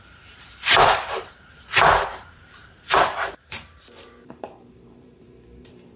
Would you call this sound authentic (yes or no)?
no